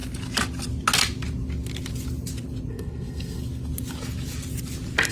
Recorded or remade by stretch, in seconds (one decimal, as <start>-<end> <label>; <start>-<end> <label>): 0.0-2.7 recorded; 2.7-3.4 remade; 3.4-5.1 recorded